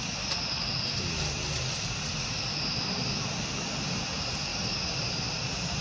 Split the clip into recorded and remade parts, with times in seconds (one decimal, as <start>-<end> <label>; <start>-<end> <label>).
0.0-4.5 recorded; 4.5-5.8 remade